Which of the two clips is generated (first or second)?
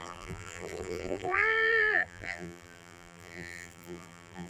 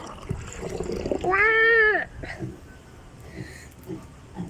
first